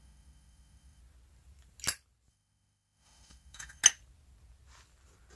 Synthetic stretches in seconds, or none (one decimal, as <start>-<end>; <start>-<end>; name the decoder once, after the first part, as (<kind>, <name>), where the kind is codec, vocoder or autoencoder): 0.0-1.0 (autoencoder, DAC-VAE); 2.3-3.8